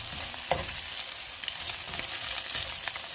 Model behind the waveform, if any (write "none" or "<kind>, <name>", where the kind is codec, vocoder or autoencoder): none